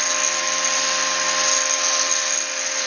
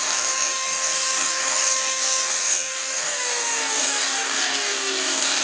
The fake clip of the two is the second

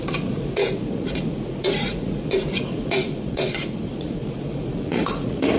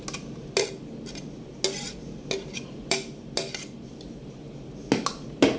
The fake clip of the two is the first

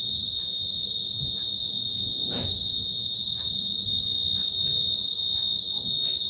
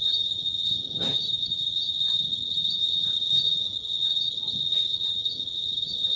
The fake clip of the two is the second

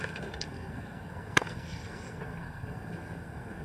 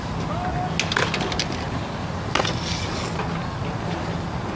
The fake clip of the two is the first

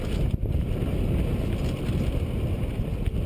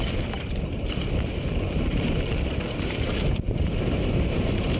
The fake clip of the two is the second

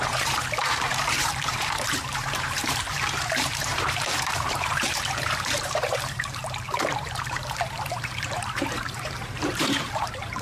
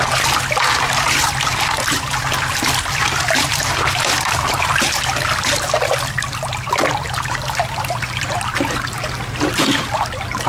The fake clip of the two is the first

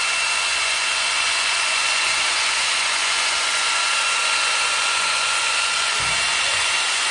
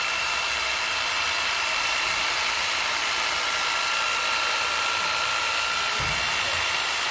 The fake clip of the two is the first